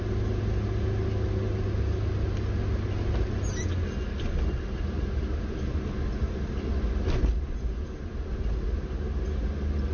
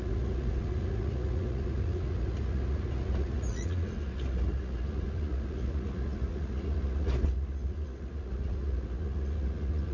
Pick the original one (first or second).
first